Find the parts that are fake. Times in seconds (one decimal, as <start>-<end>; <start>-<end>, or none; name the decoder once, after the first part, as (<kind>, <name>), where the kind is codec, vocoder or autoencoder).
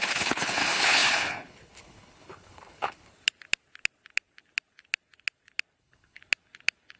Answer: 0.0-3.1 (codec, HILCodec); 5.8-6.2